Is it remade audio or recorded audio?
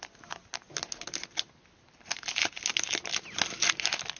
recorded